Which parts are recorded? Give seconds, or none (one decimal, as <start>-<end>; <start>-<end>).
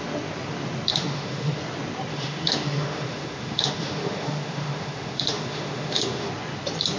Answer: 0.0-0.9; 1.6-2.1; 6.3-7.0